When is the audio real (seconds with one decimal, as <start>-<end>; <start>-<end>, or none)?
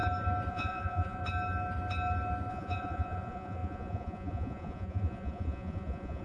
0.0-0.5; 1.2-2.5